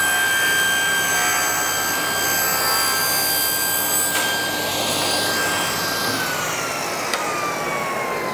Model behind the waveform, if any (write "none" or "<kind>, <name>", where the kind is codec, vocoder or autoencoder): none